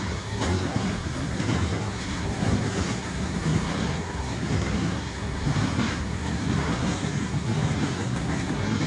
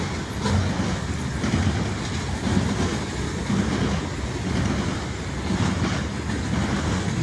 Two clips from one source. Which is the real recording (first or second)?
second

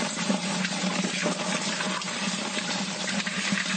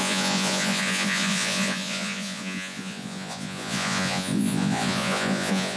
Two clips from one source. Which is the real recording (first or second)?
first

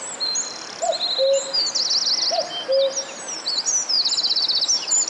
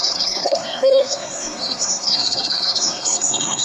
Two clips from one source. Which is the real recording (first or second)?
first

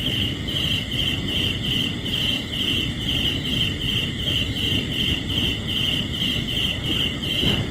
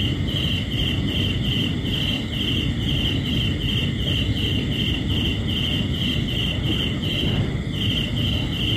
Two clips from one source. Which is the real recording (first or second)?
second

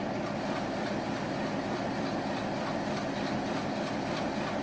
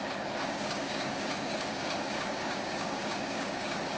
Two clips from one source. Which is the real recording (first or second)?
first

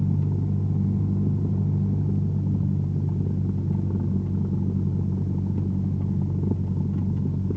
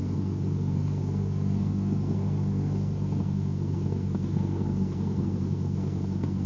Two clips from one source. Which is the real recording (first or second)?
first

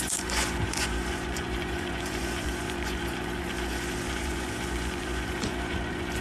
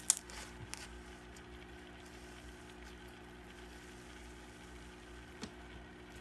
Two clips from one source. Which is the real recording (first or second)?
second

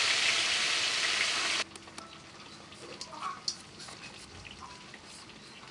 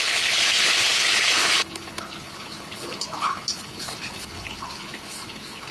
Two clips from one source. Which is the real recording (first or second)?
first